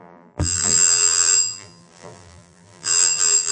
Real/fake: fake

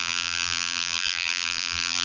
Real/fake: fake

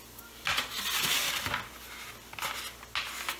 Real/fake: real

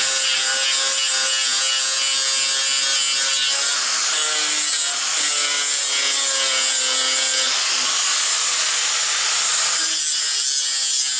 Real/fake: real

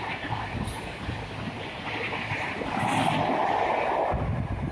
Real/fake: real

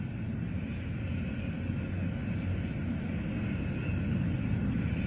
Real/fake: real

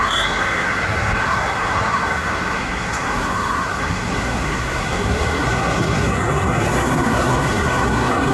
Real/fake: fake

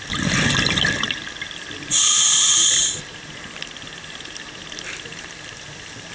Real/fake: real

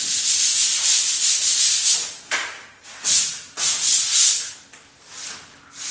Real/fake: real